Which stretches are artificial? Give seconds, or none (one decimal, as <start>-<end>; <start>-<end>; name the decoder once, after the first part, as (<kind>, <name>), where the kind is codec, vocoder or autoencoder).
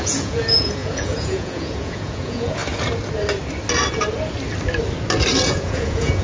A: 0.0-2.6 (vocoder, Vocos); 5.5-6.2